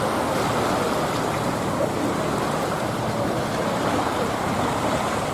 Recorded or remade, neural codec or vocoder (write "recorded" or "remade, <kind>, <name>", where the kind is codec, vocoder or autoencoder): recorded